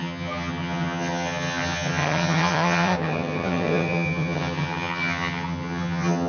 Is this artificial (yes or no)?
yes